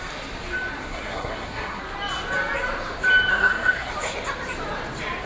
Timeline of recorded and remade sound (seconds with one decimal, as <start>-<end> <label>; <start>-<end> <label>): 0.0-0.8 recorded; 0.8-1.8 remade; 1.8-3.3 recorded; 3.3-3.9 remade; 3.9-5.3 recorded